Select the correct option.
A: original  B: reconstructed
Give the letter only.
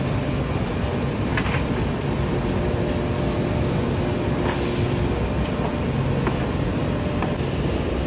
A